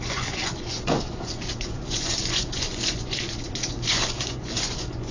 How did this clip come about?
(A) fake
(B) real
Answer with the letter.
A